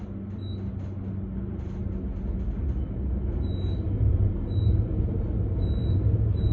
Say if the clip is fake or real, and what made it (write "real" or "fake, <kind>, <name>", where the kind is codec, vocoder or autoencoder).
real